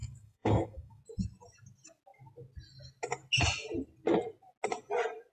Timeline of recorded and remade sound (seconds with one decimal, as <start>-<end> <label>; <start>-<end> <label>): 0.0-1.0 remade; 1.0-5.3 recorded

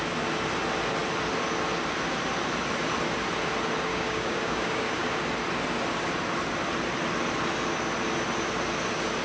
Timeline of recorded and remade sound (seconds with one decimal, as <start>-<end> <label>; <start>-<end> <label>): 0.0-3.9 recorded; 3.9-5.2 remade; 5.2-9.2 recorded